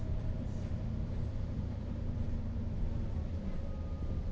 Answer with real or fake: fake